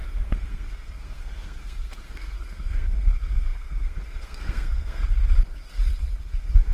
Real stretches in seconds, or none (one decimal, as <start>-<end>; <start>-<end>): 5.0-6.2